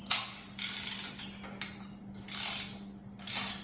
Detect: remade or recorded recorded